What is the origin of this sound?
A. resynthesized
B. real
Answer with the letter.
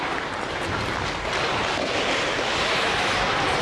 B